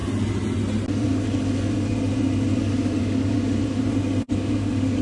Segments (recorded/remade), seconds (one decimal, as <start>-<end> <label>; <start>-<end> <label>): 0.0-3.0 recorded; 3.0-3.6 remade; 3.6-4.3 recorded; 4.3-5.0 remade